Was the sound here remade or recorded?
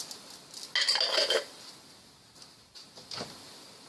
recorded